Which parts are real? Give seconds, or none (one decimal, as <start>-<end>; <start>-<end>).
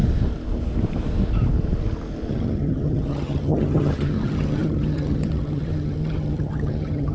0.0-2.3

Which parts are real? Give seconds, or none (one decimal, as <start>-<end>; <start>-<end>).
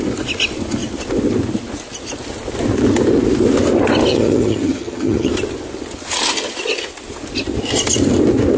0.0-4.1; 5.3-8.6